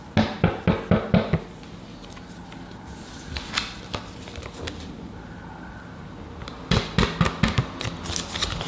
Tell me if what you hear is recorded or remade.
recorded